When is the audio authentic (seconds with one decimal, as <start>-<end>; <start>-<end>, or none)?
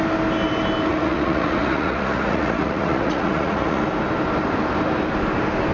0.0-0.9; 3.8-5.7